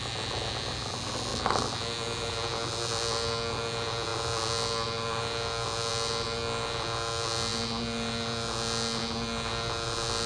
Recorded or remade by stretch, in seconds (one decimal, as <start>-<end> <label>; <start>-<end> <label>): 0.0-10.3 recorded